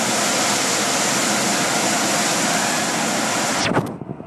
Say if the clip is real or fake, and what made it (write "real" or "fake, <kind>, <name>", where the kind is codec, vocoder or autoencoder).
real